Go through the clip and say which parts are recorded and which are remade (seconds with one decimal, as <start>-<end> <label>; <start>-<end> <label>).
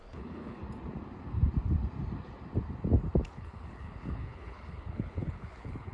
0.0-0.6 remade; 0.6-3.3 recorded; 3.3-5.9 remade